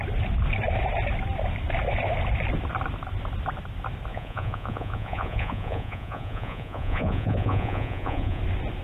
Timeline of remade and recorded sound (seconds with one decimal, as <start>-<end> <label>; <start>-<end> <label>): 0.0-4.1 recorded; 4.1-8.4 remade; 8.4-8.8 recorded